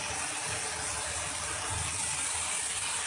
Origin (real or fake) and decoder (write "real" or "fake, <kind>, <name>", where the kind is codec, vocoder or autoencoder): real